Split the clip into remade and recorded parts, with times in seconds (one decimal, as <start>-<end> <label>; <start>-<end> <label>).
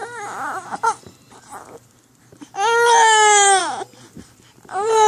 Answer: 0.0-2.3 remade; 2.3-3.6 recorded; 3.6-5.1 remade